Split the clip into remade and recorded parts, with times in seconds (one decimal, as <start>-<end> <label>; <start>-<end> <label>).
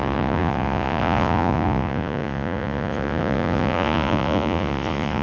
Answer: 0.0-5.2 remade